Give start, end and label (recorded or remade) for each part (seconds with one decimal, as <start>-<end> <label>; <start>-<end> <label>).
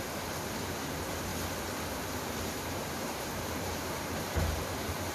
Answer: 0.0-1.3 remade; 1.3-2.3 recorded; 2.3-5.1 remade